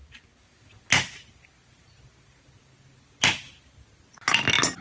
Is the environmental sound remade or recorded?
recorded